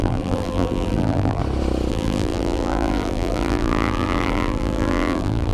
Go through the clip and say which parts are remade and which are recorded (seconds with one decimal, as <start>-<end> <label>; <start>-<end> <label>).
0.0-1.4 remade; 1.4-1.9 recorded; 1.9-5.5 remade